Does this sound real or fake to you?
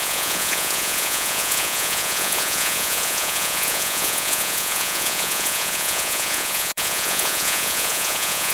fake